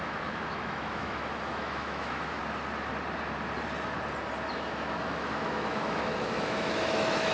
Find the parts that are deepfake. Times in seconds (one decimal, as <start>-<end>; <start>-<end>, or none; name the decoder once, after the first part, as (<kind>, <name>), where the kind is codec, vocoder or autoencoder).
0.0-2.4 (autoencoder, DAC-VAE); 4.5-7.3